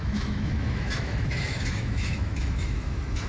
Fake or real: fake